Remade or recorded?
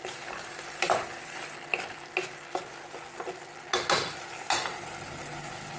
recorded